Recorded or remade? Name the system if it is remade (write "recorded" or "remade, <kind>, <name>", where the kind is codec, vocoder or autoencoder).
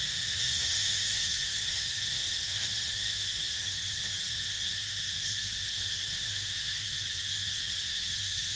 remade, autoencoder, DAC-VAE